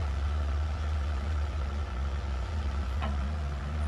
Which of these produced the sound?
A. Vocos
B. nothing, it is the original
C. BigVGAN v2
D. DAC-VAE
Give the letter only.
A